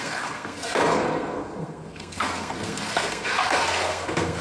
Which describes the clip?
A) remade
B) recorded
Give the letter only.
A